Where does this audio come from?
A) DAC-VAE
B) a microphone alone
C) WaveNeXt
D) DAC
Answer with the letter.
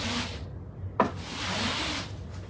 B